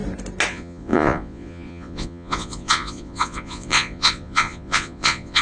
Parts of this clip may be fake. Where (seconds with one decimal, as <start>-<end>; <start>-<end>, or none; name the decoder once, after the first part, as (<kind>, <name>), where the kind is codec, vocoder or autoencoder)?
0.5-5.4 (vocoder, Vocos)